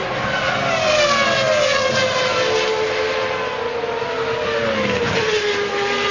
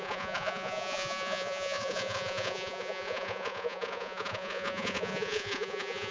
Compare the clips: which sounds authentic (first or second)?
first